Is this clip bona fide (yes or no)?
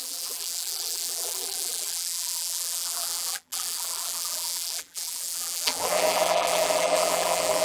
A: no